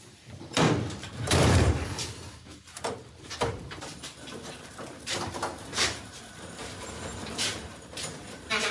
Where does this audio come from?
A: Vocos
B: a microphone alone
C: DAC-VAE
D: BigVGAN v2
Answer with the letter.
D